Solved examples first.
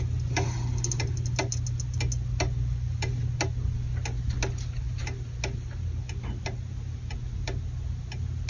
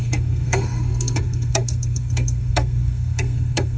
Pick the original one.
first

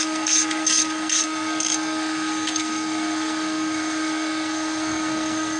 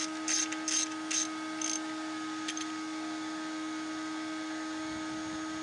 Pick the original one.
second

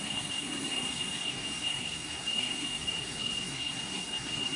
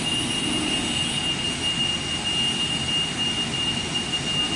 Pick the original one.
second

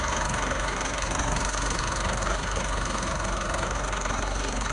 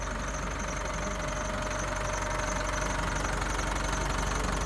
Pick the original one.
second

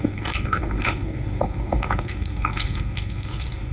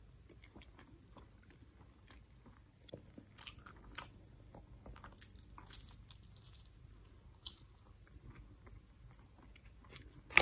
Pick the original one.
second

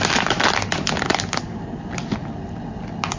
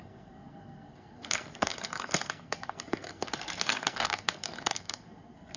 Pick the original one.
first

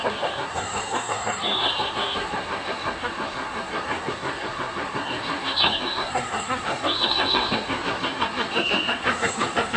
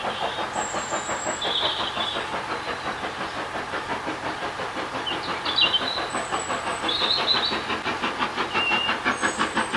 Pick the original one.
second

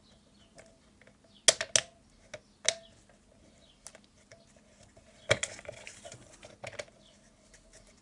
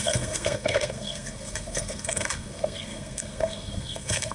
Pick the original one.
first